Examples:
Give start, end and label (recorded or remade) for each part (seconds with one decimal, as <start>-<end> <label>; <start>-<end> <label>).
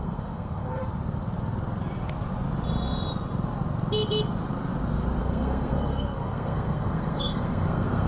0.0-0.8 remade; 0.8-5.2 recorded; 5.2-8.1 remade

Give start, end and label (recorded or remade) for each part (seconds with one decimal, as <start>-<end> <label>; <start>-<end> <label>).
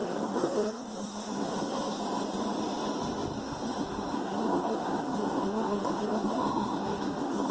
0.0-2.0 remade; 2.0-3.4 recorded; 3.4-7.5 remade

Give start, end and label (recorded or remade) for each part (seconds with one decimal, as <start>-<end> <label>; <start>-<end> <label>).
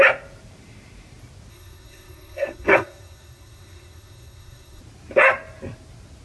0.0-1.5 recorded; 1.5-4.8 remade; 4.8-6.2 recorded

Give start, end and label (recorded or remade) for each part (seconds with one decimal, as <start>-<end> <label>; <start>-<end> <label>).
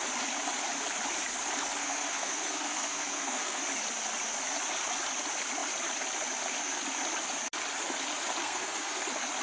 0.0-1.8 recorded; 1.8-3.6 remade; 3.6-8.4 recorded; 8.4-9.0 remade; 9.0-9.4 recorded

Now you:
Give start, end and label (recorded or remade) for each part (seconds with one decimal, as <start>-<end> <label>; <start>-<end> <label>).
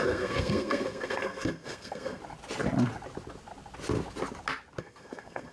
0.0-2.2 remade; 2.2-4.8 recorded; 4.8-5.5 remade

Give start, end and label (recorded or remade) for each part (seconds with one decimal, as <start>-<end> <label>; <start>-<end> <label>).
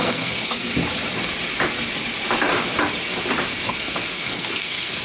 0.0-0.7 remade; 0.7-3.7 recorded; 3.7-5.0 remade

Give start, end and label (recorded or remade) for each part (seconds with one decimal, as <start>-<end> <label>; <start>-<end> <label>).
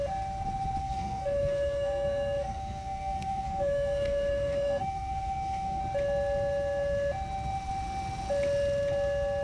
0.0-0.8 recorded; 0.8-5.8 remade; 5.8-9.4 recorded